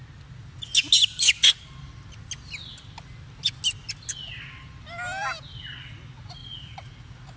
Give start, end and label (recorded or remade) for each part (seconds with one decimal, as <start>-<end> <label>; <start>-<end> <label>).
0.0-6.4 recorded; 6.4-7.4 remade